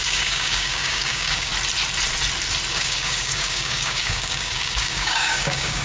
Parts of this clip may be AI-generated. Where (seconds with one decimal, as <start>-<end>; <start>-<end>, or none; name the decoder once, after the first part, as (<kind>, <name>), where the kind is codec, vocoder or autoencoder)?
0.0-1.5 (codec, DAC); 2.7-5.8